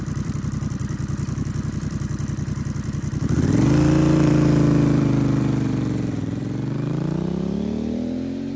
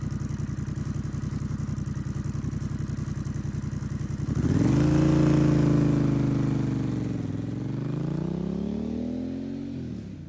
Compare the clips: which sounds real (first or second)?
second